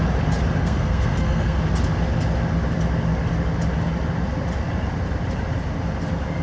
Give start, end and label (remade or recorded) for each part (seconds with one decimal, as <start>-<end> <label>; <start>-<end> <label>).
0.0-0.6 recorded; 0.6-1.6 remade; 1.6-6.4 recorded